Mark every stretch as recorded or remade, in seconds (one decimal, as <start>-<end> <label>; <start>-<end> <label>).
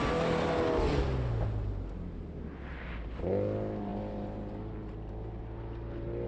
0.0-6.3 recorded